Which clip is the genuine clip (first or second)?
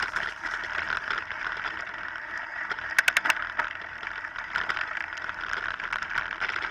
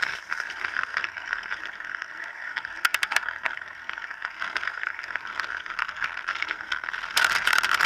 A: first